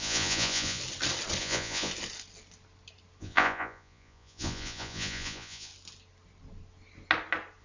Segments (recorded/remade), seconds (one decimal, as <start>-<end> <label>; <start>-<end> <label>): 0.0-0.8 remade; 0.8-1.4 recorded; 1.4-1.9 remade; 1.9-3.2 recorded; 3.2-5.7 remade; 5.7-7.6 recorded